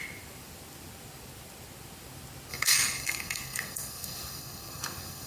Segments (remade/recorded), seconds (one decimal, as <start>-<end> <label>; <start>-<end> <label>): 0.0-2.5 recorded; 2.5-5.3 remade